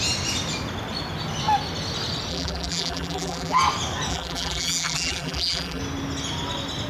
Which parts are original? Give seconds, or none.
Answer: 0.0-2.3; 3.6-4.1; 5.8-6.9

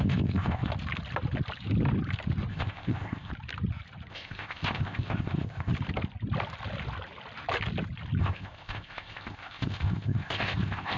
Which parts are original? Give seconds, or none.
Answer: 0.7-2.5; 3.3-4.1; 5.7-8.2

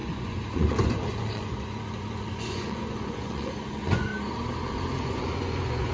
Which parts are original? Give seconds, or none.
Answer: 4.1-5.0

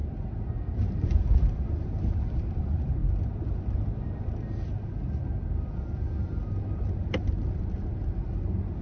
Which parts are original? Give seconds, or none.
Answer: 1.2-3.0; 4.2-8.8

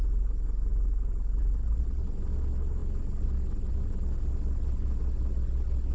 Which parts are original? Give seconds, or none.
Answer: 0.0-5.9

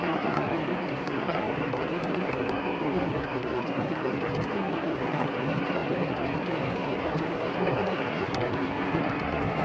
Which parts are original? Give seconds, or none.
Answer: none

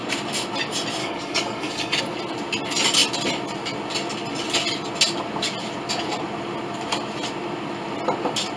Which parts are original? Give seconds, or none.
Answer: 0.0-1.0; 2.0-8.6